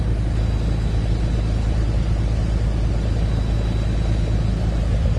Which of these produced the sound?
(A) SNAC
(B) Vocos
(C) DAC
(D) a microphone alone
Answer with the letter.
D